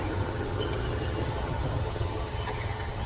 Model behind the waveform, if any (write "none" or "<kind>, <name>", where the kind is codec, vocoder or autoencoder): vocoder, HiFi-GAN